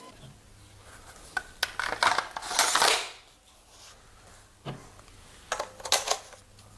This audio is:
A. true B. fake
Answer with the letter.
A